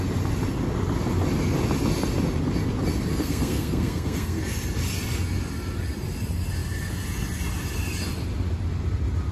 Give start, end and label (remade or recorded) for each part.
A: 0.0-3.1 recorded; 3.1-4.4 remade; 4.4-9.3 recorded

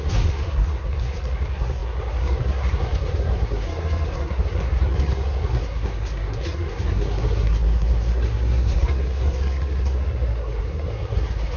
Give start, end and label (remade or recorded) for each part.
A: 0.0-11.6 remade

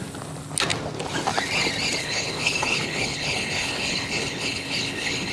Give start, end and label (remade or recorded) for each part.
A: 0.0-2.0 recorded; 2.0-5.3 remade

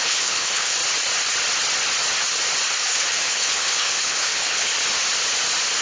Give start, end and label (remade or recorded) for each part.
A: 0.0-0.8 remade; 0.8-2.8 recorded; 2.8-4.7 remade; 4.7-5.8 recorded